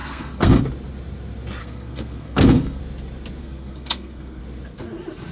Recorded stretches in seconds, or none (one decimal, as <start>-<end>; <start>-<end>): 0.6-1.6; 2.8-3.4; 4.4-5.3